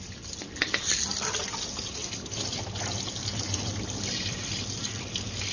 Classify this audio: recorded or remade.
recorded